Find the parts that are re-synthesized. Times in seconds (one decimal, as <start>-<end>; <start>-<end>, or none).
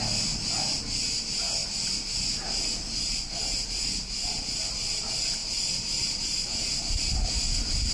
none